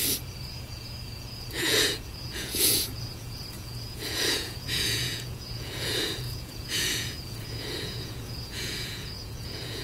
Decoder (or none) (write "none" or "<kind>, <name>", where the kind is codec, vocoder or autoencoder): vocoder, Vocos